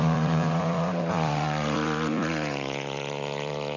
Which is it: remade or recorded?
remade